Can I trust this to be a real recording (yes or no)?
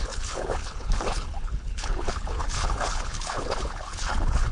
no